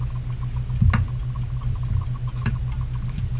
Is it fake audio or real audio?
real